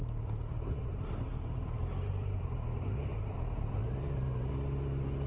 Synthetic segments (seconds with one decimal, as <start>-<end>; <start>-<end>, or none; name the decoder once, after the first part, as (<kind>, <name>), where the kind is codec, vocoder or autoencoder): 0.0-0.8 (vocoder, BigVGAN v2); 1.3-4.5